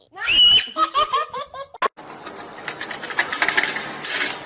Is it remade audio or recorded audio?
recorded